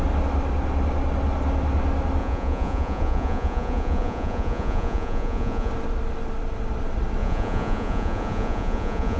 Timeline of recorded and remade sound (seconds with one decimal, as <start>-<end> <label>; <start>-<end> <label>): 0.0-2.2 recorded; 2.2-5.7 remade; 5.7-7.2 recorded; 7.2-9.2 remade